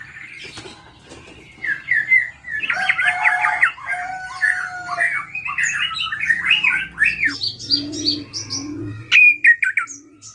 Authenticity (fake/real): real